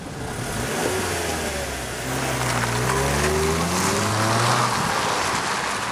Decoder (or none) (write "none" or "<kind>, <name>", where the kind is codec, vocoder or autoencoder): none